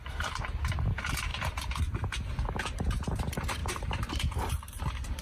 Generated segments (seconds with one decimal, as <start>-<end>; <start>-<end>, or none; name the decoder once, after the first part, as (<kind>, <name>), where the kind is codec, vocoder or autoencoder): 0.0-1.3 (vocoder, BigVGAN v2); 2.6-5.2